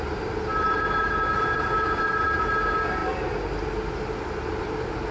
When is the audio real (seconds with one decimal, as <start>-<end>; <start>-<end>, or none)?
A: 0.0-5.1